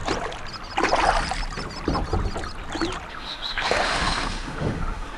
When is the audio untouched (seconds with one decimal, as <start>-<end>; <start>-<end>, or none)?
0.0-3.1